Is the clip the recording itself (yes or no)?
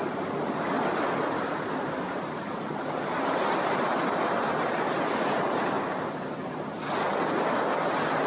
yes